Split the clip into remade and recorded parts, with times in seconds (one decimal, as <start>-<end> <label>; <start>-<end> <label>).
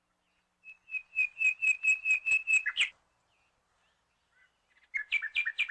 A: 0.0-5.7 recorded